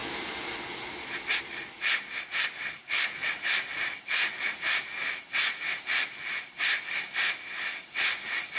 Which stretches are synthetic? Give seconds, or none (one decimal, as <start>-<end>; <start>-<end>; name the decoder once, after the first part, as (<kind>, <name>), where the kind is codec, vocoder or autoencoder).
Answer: none